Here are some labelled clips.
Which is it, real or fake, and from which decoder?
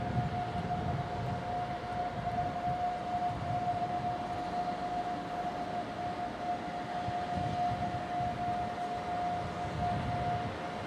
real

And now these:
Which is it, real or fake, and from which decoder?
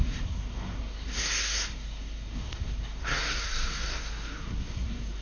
fake, codec, SNAC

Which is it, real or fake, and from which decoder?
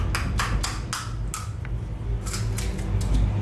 real